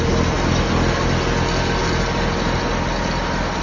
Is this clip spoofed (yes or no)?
no